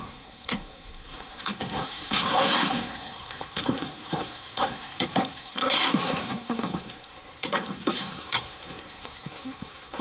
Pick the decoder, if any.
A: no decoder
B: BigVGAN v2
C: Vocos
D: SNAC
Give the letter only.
D